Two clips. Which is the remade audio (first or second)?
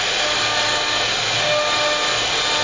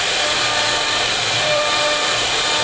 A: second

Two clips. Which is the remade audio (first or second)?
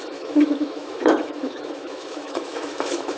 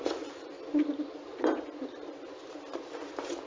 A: first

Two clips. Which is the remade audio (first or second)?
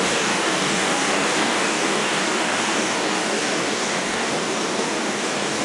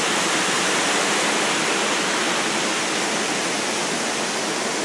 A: first